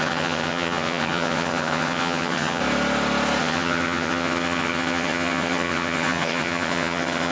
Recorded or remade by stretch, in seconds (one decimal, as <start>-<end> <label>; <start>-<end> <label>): 0.0-2.6 remade; 2.6-3.4 recorded; 3.4-7.3 remade